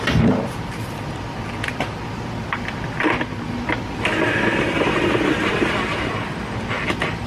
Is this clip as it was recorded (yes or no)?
yes